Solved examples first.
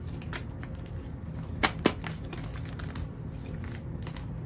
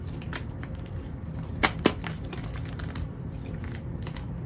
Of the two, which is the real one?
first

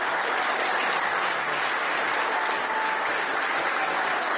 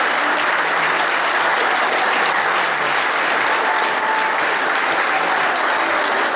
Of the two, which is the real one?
first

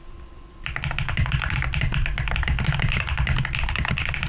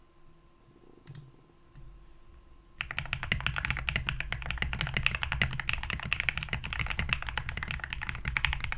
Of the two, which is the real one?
second